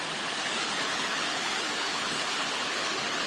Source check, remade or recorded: remade